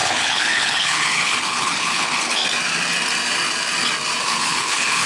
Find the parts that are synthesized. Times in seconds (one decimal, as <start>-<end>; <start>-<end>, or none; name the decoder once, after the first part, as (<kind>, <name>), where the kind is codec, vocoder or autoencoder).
0.0-2.4 (codec, HILCodec); 4.2-5.1